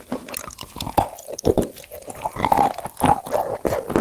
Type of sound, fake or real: real